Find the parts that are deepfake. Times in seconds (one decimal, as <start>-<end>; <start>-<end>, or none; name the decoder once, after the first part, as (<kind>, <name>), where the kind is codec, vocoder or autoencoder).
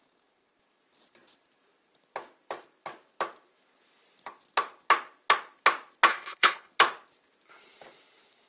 6.1-6.7 (codec, HILCodec)